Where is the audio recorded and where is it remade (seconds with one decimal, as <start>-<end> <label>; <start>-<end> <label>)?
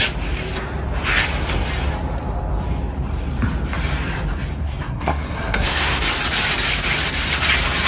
0.0-4.6 recorded; 4.6-6.0 remade; 6.0-7.9 recorded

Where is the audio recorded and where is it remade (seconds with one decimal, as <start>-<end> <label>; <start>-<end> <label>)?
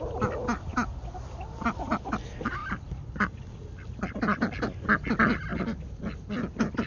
0.0-2.6 recorded; 2.6-3.5 remade; 3.5-5.5 recorded; 5.5-6.3 remade; 6.3-6.9 recorded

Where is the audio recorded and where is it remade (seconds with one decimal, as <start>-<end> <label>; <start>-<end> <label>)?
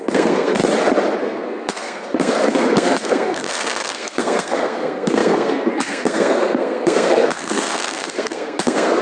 0.0-0.6 remade; 0.6-1.2 recorded; 1.2-9.0 remade